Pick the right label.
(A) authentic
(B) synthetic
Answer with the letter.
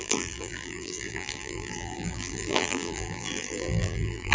B